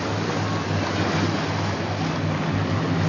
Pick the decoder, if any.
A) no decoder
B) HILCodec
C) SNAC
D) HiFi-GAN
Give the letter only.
A